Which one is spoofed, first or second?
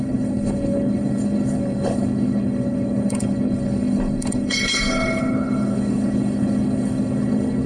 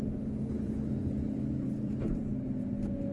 first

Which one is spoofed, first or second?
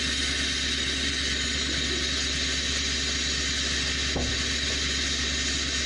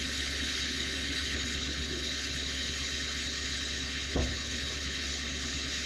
second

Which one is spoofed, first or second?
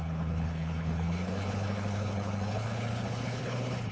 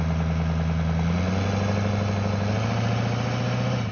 first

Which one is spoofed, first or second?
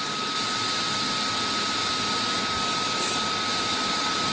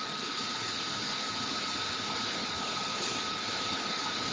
second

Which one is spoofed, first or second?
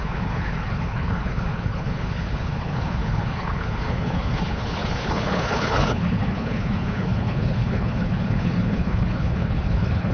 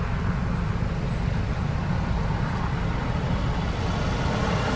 first